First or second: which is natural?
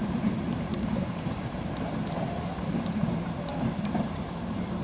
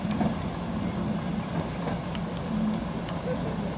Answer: second